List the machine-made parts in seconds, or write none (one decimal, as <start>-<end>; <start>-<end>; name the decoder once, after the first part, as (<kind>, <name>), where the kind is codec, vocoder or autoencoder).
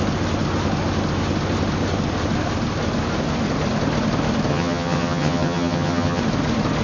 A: 4.5-6.2 (vocoder, HiFi-GAN)